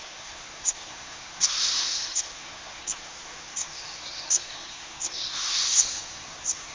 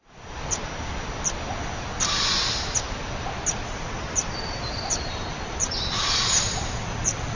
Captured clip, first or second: second